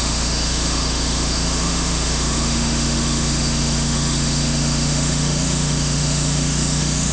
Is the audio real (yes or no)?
no